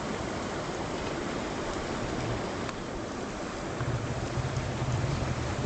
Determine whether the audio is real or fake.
real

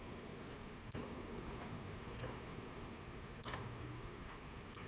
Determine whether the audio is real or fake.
fake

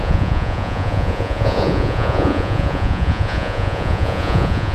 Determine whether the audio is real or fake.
fake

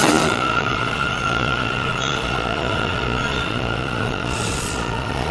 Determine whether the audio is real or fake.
fake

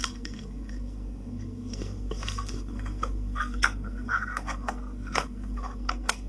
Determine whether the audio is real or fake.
fake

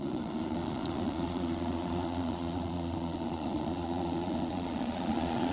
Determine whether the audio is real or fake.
fake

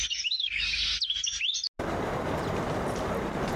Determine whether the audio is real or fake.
real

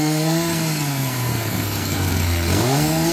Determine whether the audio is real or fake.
fake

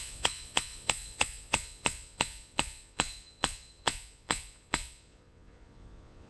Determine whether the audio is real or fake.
fake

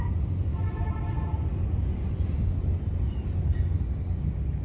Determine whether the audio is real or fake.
real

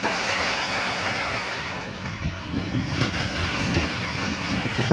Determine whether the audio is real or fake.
fake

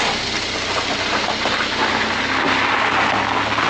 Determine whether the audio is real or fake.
real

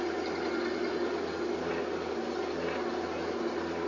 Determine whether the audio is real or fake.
real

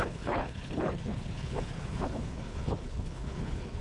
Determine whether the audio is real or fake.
fake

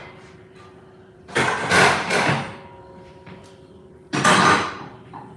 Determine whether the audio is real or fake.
fake